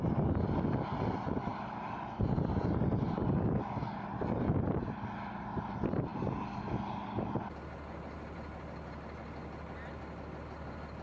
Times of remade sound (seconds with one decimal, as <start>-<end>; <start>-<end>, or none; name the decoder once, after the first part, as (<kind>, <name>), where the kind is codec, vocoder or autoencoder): none